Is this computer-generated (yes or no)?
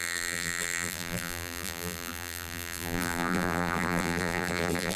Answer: yes